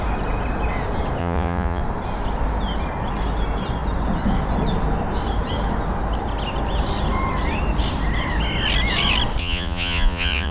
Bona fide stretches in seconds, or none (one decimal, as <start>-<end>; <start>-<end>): 0.0-1.2; 1.8-9.4